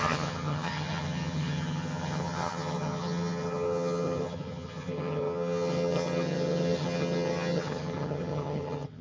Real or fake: fake